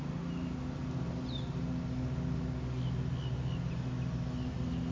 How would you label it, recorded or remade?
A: recorded